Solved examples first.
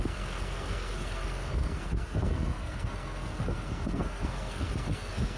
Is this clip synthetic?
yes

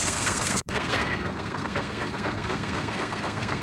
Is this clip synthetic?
yes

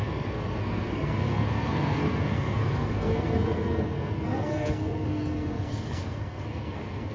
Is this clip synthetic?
yes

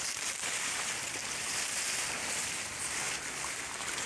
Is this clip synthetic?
no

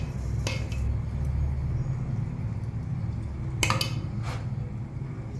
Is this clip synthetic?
no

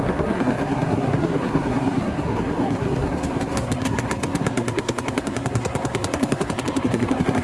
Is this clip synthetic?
yes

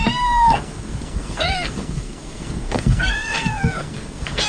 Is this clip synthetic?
yes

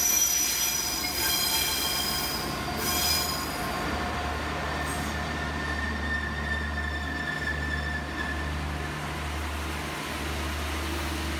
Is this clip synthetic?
no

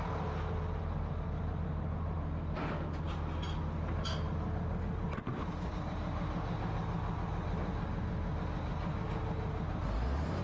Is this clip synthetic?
no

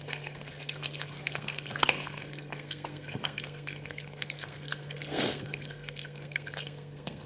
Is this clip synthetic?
yes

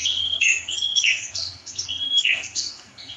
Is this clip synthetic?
yes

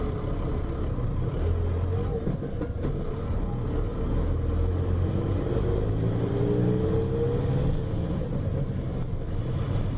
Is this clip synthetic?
no